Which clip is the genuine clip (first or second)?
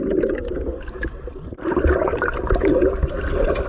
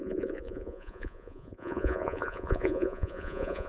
first